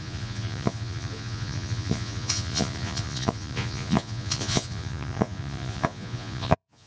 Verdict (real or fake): fake